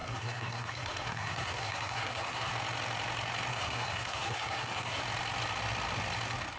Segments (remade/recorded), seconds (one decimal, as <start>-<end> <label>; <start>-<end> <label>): 0.0-2.5 remade; 2.5-3.5 recorded; 3.5-5.0 remade; 5.0-6.6 recorded